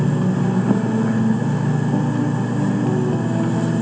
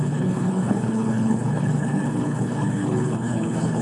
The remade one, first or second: second